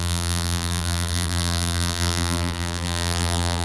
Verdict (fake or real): fake